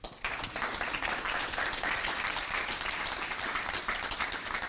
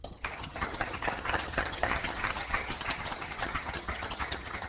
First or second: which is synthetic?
second